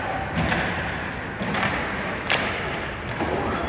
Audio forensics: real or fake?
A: real